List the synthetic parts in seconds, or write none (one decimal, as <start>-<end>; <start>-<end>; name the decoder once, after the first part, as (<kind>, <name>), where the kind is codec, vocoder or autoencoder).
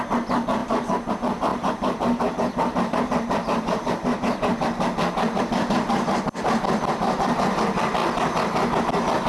0.6-1.1 (vocoder, BigVGAN v2); 1.5-5.4